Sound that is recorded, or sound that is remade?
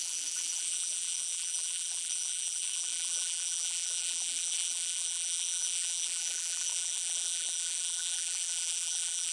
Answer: remade